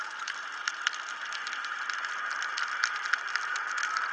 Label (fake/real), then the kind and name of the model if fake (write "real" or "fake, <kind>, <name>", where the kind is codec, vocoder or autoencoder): real